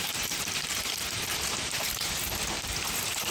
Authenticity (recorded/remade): remade